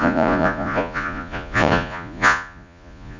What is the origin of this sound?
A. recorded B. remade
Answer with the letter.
B